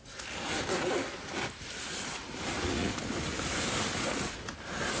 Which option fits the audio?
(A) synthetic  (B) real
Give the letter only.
B